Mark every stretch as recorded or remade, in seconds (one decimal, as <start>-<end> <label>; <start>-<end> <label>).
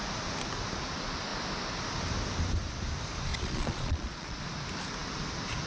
0.0-3.3 recorded; 3.3-4.4 remade; 4.4-5.7 recorded